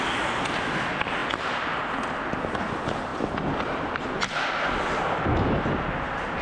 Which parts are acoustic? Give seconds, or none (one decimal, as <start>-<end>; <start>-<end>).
0.0-6.4